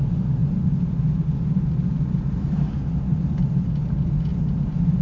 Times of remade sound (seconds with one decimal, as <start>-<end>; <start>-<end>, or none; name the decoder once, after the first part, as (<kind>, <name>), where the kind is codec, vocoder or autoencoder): none